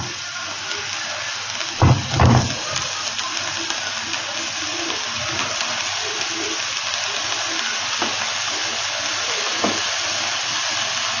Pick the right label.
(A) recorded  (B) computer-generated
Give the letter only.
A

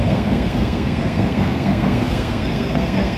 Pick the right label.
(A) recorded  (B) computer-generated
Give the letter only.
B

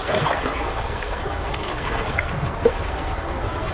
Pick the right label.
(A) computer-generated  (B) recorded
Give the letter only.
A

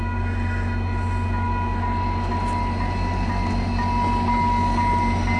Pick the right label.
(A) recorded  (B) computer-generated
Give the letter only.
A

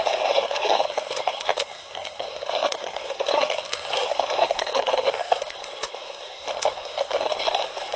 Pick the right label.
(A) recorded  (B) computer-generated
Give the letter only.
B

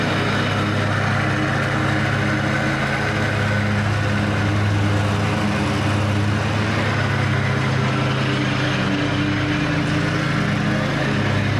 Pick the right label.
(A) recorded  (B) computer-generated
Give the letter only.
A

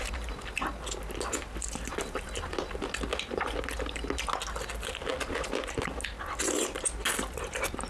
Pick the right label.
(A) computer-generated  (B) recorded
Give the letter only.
B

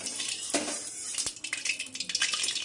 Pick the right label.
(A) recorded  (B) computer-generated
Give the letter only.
A